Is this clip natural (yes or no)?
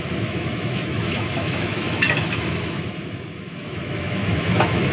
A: no